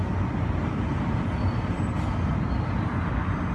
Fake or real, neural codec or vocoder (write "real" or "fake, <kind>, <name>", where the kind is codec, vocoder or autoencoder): real